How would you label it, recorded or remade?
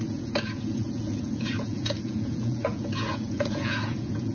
remade